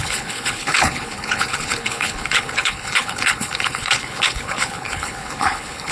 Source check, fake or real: fake